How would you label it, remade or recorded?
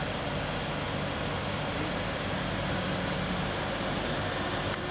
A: recorded